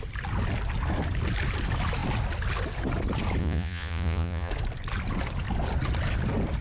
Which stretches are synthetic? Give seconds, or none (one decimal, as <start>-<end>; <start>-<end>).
3.4-4.5